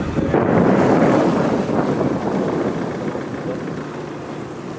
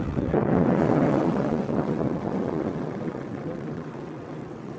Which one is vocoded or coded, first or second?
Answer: second